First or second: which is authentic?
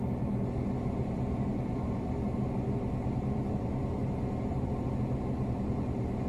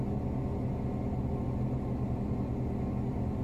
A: second